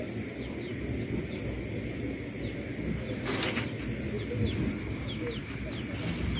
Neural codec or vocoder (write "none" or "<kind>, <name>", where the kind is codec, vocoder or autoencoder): none